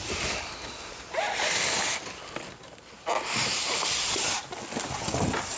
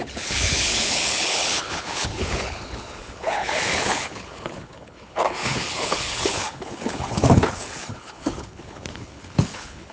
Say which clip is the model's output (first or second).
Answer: second